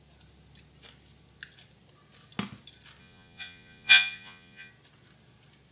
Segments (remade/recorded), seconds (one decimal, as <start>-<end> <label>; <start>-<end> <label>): 0.0-3.0 recorded; 3.0-4.7 remade; 4.7-5.7 recorded